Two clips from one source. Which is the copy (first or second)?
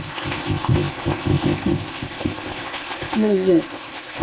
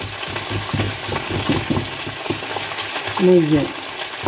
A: first